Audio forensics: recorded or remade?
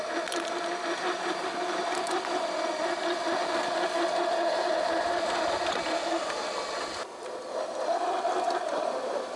recorded